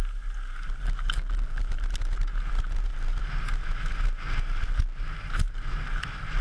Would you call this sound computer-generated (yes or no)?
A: no